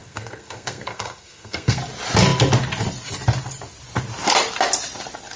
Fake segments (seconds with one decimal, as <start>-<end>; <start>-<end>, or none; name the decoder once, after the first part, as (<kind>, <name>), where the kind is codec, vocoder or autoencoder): 0.0-1.8 (codec, SNAC)